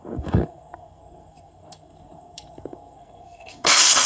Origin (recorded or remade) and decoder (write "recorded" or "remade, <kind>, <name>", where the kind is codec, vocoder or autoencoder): remade, codec, SNAC